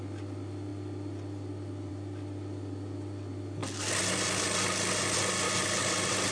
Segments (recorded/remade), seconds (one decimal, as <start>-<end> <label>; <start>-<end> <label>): 0.0-6.3 recorded